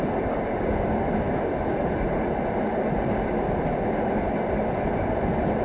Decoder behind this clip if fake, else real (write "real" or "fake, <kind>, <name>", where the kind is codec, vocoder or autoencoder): real